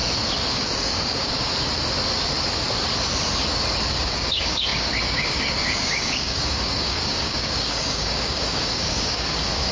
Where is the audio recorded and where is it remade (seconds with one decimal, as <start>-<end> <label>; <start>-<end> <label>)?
0.0-0.5 recorded; 0.5-1.5 remade; 1.5-3.9 recorded; 3.9-9.7 remade